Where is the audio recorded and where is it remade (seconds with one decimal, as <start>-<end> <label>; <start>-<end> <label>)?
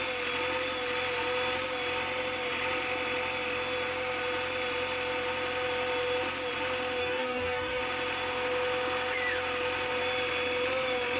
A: 0.0-7.0 recorded; 7.0-7.8 remade; 7.8-11.2 recorded